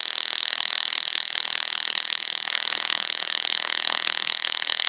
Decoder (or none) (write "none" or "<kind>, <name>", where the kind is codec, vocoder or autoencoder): codec, HILCodec